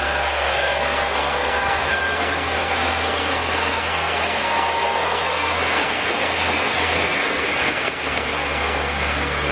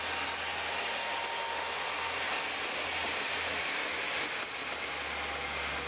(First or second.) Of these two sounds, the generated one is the first